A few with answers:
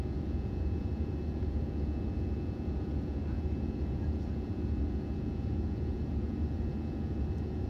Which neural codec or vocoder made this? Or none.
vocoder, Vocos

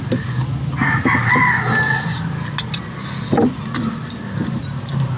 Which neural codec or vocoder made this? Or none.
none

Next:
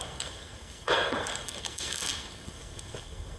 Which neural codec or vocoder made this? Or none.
codec, SNAC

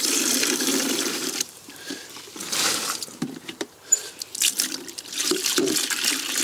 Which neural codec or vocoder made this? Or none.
vocoder, BigVGAN v2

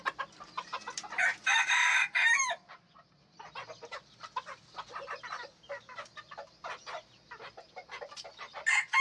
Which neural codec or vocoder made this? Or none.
none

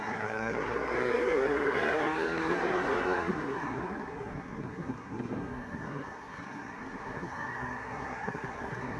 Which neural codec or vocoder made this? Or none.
codec, SNAC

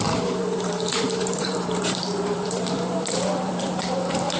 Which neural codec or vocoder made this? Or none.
vocoder, BigVGAN v2